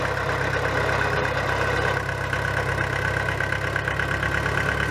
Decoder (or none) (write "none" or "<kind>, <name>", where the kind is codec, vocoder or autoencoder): none